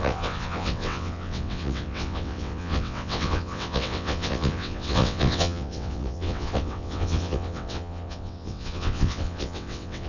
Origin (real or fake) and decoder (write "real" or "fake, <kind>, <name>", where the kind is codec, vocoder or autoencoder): fake, vocoder, WaveNeXt